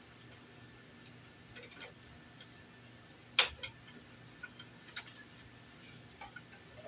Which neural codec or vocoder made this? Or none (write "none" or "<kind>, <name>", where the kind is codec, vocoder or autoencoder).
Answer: none